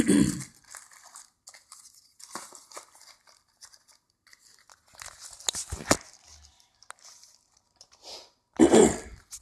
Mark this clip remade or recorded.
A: recorded